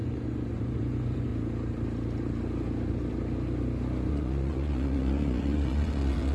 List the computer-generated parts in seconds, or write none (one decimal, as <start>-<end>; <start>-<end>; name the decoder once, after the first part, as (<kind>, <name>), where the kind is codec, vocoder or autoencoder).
0.0-1.3 (vocoder, Vocos); 4.1-6.3